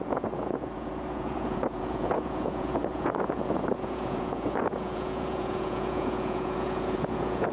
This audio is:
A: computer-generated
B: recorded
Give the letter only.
A